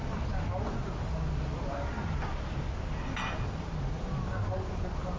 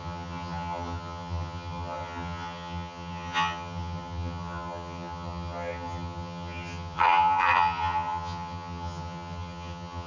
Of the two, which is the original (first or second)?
first